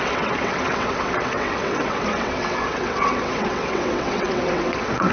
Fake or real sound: fake